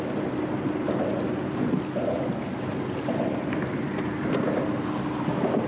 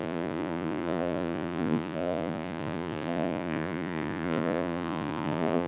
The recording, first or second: first